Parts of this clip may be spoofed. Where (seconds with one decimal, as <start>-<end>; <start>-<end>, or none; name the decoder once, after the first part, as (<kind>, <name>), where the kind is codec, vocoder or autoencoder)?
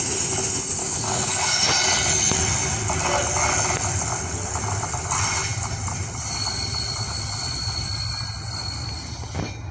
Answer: 0.8-1.6 (codec, DAC)